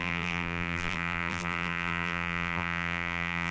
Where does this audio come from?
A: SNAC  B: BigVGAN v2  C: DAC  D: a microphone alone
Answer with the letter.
B